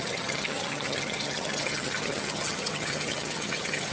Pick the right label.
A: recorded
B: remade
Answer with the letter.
B